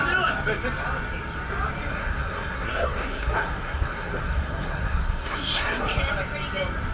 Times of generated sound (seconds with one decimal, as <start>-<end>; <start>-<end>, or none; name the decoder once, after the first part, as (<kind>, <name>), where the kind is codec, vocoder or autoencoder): 1.9-6.0 (codec, SNAC)